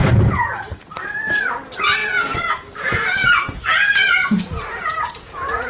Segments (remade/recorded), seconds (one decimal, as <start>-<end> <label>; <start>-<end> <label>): 0.0-1.4 remade; 1.4-2.0 recorded; 2.0-5.7 remade